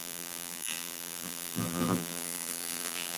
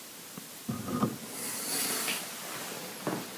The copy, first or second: first